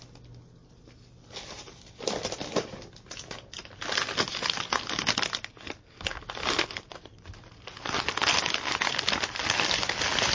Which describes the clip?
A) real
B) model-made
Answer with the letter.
A